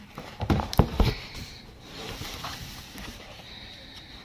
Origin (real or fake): fake